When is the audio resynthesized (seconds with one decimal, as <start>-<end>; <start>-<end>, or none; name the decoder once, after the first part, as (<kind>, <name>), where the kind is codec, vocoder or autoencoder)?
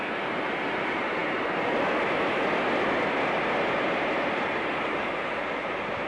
0.0-1.2 (vocoder, BigVGAN v2); 4.9-6.1